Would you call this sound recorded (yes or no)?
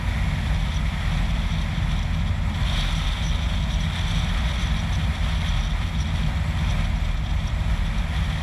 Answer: yes